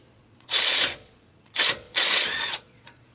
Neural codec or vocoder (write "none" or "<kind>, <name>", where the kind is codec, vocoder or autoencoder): vocoder, Vocos